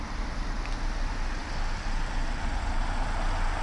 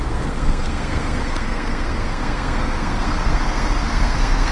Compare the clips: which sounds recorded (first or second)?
first